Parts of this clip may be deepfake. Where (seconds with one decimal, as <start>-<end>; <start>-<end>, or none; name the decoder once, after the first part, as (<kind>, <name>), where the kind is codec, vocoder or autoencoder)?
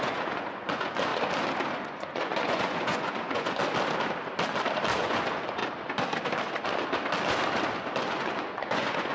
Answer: 0.0-1.1 (vocoder, Vocos); 1.8-3.6; 5.0-5.6; 8.0-9.1